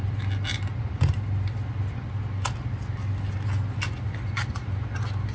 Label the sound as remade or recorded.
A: recorded